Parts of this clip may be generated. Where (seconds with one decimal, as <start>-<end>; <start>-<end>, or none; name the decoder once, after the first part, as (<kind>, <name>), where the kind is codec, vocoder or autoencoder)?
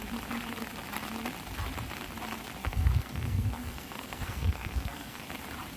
2.6-5.2 (codec, SNAC)